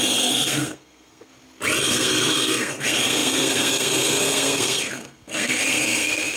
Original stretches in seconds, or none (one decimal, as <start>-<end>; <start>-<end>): 1.3-1.8